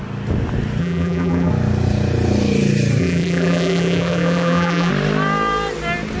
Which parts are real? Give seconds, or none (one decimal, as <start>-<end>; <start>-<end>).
0.0-0.8; 1.5-3.0; 4.9-6.2